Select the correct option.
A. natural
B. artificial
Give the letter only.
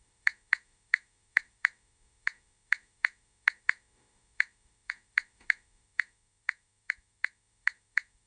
B